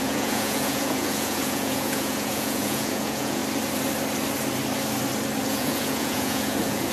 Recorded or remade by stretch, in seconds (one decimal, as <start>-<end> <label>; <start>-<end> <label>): 0.0-3.4 remade; 3.4-5.5 recorded; 5.5-6.9 remade